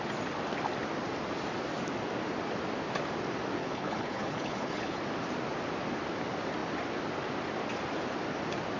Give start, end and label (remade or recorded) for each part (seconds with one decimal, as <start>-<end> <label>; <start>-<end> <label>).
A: 0.0-3.6 recorded; 3.6-5.0 remade; 5.0-8.8 recorded